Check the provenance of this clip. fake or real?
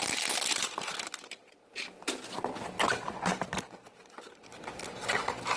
real